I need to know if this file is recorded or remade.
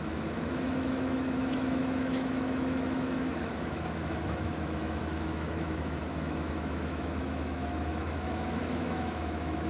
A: remade